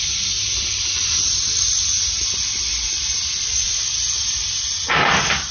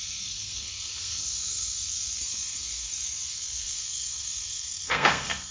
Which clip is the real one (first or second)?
first